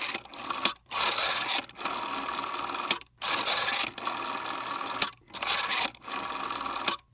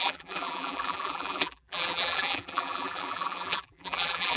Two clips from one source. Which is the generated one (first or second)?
second